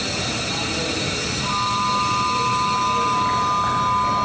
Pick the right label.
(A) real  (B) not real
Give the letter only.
A